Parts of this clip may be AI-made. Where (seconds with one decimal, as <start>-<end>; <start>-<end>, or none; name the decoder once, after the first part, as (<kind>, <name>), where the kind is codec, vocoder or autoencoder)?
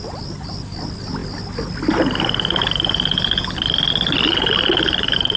none